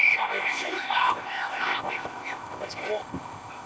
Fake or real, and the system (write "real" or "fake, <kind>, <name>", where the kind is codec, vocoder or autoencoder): fake, codec, ZipCodec